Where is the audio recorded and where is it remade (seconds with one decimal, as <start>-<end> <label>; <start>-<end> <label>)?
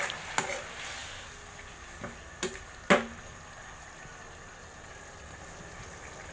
0.0-6.3 recorded